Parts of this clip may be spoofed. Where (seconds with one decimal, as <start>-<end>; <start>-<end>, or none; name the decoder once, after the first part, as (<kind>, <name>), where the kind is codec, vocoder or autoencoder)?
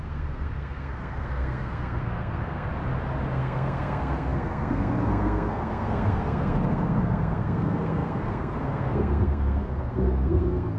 0.0-2.7 (codec, SNAC); 3.3-10.8